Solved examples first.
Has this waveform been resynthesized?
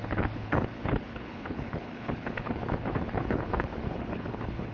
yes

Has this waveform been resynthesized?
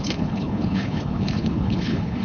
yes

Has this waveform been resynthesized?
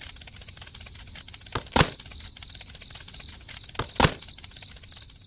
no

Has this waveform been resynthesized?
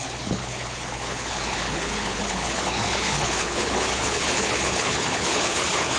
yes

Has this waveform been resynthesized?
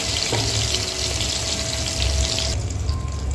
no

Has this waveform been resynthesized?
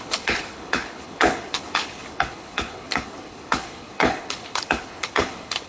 yes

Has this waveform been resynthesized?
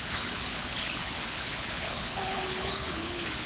yes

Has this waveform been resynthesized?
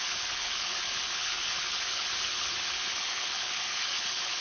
yes